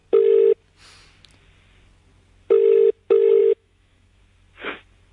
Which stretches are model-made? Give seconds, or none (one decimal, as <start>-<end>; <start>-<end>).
3.4-4.2